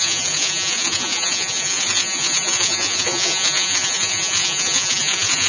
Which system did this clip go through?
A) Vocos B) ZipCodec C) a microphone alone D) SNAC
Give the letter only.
A